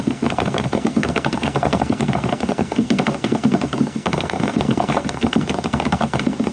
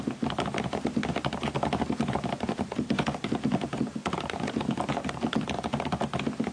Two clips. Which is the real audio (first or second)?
second